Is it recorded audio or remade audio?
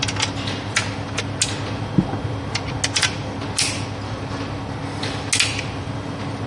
recorded